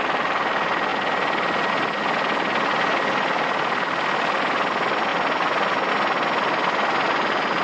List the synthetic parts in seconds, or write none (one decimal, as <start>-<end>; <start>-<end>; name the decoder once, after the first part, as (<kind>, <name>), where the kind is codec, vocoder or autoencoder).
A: none